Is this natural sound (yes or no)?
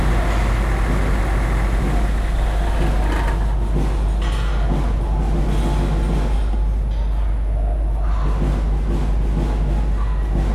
yes